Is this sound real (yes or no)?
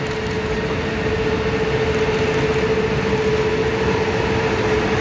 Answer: yes